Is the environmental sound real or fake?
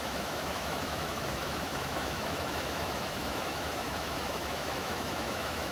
fake